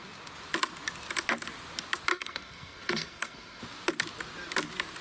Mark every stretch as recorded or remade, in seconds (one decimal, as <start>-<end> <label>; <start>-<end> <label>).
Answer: 0.0-2.1 recorded; 2.1-3.6 remade; 3.6-5.0 recorded

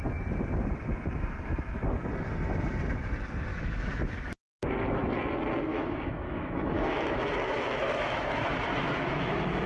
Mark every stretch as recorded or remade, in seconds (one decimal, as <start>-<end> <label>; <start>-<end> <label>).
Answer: 0.0-3.5 recorded; 3.5-4.6 remade; 4.6-5.7 recorded; 5.7-9.7 remade